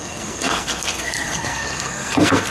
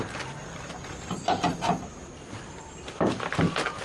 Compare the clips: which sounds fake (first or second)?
first